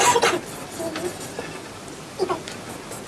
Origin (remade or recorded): recorded